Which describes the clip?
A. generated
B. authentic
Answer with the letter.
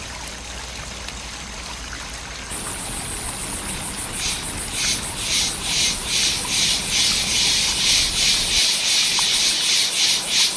B